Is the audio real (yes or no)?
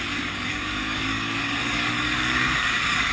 no